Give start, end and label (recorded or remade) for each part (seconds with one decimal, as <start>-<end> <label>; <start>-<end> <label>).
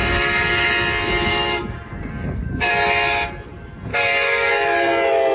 0.0-0.7 remade; 0.7-1.3 recorded; 1.3-2.7 remade; 2.7-3.9 recorded; 3.9-4.5 remade; 4.5-5.3 recorded